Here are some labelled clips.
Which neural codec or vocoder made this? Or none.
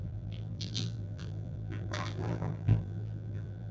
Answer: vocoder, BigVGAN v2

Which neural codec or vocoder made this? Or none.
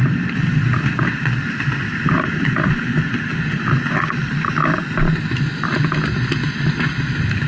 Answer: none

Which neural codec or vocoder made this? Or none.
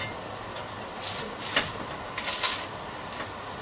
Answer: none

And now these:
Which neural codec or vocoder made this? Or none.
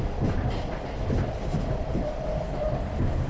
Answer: vocoder, BigVGAN v2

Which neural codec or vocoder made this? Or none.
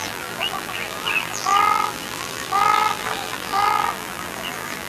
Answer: vocoder, BigVGAN v2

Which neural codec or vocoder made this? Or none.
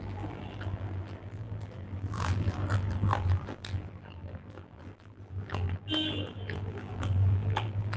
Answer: vocoder, BigVGAN v2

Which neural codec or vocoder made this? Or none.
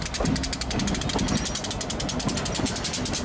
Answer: none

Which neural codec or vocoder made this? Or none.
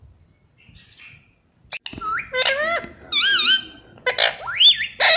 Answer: none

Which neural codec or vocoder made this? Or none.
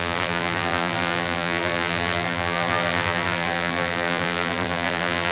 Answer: vocoder, BigVGAN v2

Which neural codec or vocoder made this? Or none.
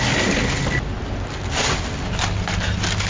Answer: none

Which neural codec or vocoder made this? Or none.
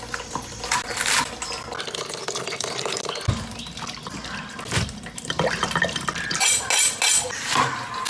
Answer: none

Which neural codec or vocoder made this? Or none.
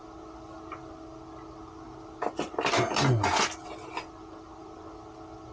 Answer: none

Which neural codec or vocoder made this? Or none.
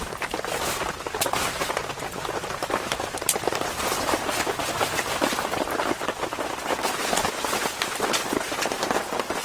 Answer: none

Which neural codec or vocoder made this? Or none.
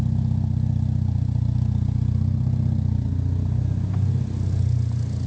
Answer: none